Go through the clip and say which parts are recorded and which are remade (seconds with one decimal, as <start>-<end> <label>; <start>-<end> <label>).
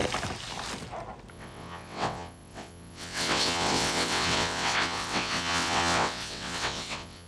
0.0-1.3 recorded; 1.3-7.3 remade